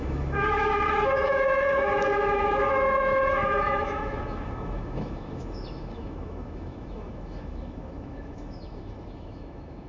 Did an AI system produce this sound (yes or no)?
yes